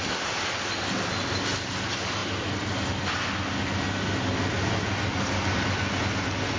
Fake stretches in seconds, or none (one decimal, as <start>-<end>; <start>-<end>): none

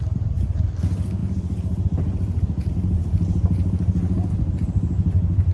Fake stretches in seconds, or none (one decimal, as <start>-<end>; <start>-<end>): none

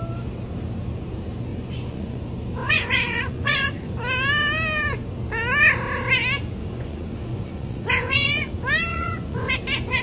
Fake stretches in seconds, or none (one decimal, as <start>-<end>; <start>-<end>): 1.5-2.2; 2.6-3.9; 6.6-8.5; 8.9-9.5

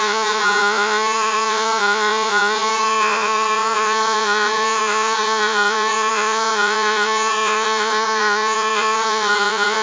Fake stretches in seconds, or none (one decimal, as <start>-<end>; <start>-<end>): 0.0-9.8

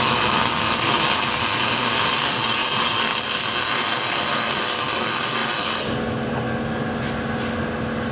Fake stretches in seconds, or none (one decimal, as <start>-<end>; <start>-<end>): none

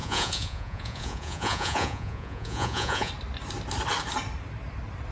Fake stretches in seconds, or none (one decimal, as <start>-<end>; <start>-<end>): 0.0-3.1